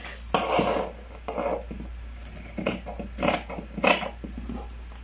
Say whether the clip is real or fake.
real